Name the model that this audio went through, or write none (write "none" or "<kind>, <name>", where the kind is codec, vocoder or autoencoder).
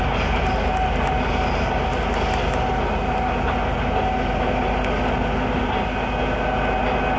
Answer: none